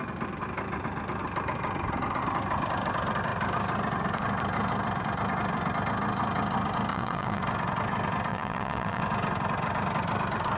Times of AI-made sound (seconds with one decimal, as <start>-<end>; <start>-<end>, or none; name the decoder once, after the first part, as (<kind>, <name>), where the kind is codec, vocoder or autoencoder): 6.9-7.4 (vocoder, WaveNeXt); 8.3-9.0